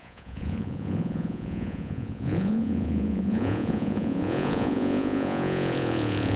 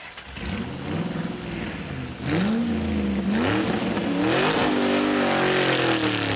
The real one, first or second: second